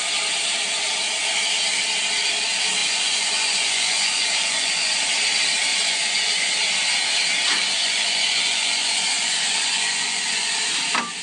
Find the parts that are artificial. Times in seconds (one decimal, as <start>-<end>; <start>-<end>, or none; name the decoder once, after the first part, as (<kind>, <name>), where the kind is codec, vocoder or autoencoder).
2.8-5.1 (vocoder, Vocos); 5.7-6.5; 7.6-10.5